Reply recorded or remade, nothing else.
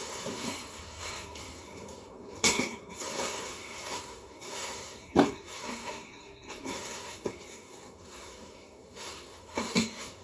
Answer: remade